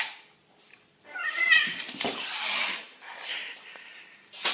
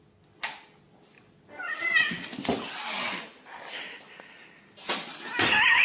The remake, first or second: first